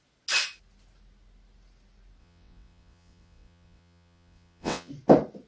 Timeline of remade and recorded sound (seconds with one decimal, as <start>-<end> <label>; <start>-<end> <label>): 0.0-2.2 recorded; 2.2-4.9 remade; 4.9-5.5 recorded